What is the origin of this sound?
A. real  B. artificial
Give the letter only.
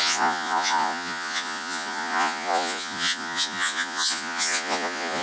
B